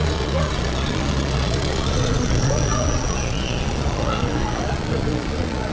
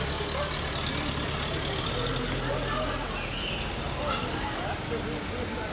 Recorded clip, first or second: second